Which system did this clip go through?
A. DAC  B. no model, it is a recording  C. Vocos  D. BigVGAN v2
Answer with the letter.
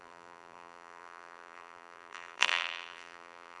D